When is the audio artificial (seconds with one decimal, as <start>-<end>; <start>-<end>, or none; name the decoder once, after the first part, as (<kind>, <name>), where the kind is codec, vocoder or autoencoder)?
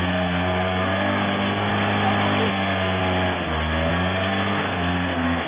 0.0-1.7 (codec, SNAC); 2.5-3.0; 3.9-5.5